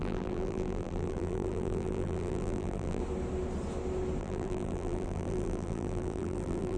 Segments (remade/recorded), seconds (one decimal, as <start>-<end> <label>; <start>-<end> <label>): 0.0-3.0 remade; 3.0-4.2 recorded; 4.2-6.8 remade